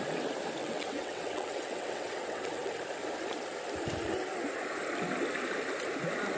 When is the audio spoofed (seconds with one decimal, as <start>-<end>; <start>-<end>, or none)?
0.6-2.7